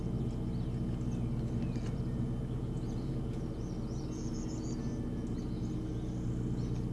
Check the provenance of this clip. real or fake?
real